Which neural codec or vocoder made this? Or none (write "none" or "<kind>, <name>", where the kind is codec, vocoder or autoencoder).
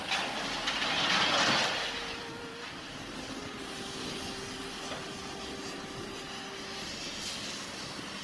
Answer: none